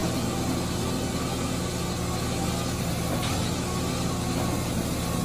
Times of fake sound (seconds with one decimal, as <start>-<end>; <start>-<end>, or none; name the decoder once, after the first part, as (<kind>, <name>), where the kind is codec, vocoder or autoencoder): none